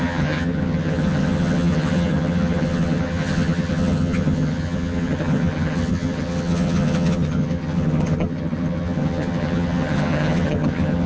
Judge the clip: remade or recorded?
remade